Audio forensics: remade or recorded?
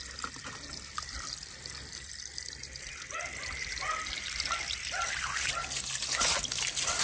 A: recorded